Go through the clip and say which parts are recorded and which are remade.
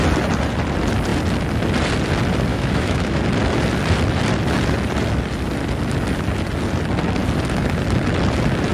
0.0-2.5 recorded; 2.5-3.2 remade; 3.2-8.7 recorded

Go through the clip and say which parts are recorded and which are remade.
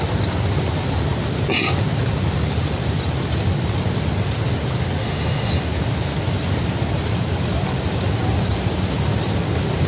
0.0-5.0 recorded; 5.0-5.6 remade; 5.6-9.9 recorded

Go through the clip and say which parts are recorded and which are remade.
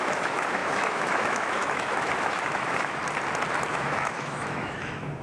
0.0-3.0 remade; 3.0-3.7 recorded; 3.7-5.2 remade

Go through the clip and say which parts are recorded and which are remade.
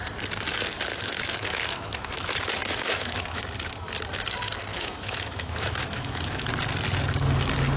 0.0-0.9 recorded; 0.9-3.4 remade; 3.4-4.7 recorded; 4.7-6.5 remade; 6.5-7.8 recorded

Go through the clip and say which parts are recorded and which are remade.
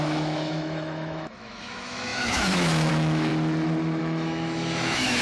0.0-3.3 remade; 3.3-4.0 recorded; 4.0-5.2 remade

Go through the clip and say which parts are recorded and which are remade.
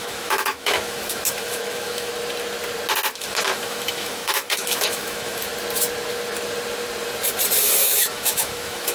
0.0-2.1 remade; 2.1-3.1 recorded; 3.1-5.5 remade; 5.5-7.6 recorded; 7.6-8.9 remade